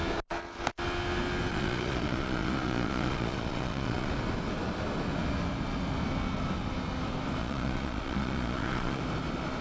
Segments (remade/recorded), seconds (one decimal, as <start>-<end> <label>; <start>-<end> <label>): 0.0-1.5 recorded; 1.5-4.1 remade; 4.1-7.4 recorded; 7.4-9.0 remade; 9.0-9.6 recorded